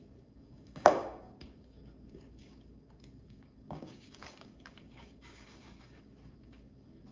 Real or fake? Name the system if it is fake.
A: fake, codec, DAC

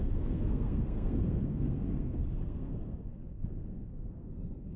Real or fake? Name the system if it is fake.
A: fake, codec, SNAC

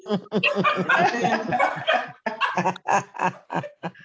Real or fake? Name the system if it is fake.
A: real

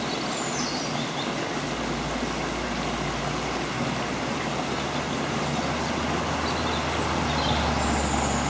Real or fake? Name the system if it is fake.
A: real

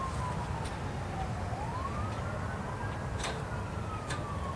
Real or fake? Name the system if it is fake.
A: real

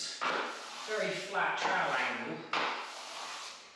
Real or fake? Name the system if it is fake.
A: real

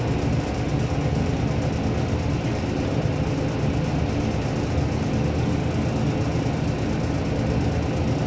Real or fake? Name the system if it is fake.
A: real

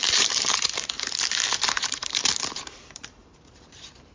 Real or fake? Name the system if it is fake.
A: fake, vocoder, BigVGAN v2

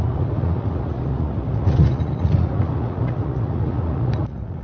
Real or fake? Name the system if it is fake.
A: fake, vocoder, Vocos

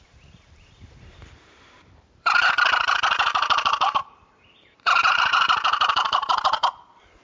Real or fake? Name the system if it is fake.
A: fake, vocoder, BigVGAN v2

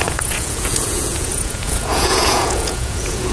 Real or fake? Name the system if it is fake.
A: fake, vocoder, Vocos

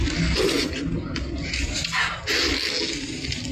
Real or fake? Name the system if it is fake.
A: real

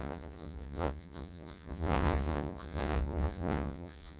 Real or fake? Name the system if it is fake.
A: fake, vocoder, Vocos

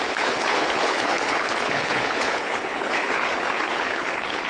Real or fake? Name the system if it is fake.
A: fake, codec, HILCodec